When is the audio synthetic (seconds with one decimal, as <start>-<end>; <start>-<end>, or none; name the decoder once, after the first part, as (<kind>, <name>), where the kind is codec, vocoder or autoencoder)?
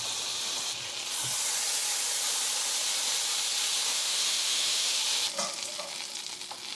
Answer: 3.9-5.0 (autoencoder, DAC-VAE)